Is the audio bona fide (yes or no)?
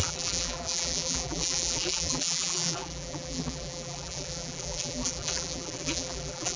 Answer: no